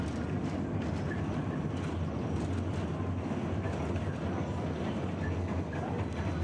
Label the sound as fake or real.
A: real